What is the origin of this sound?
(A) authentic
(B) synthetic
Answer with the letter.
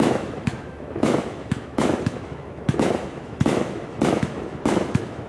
B